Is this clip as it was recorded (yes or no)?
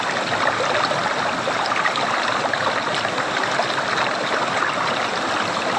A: yes